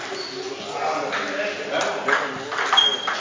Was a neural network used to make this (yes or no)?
no